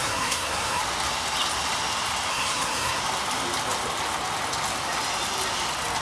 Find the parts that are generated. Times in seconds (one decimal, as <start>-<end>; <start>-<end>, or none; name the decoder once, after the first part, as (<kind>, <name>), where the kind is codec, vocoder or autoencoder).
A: 0.0-0.8 (codec, SNAC); 2.3-3.0